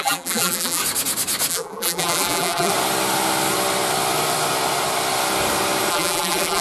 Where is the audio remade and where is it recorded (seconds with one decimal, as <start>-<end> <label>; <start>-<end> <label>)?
0.0-0.8 remade; 0.8-1.5 recorded; 1.5-2.7 remade; 2.7-5.9 recorded; 5.9-6.6 remade